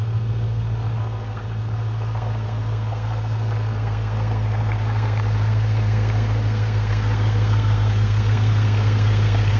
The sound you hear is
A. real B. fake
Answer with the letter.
B